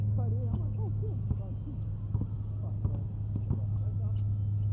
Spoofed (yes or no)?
no